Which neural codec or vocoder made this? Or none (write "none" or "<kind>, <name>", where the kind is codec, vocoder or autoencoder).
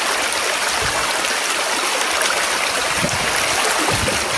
none